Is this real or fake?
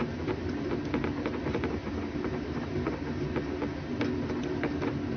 real